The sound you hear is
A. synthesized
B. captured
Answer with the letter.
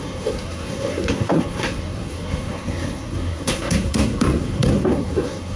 A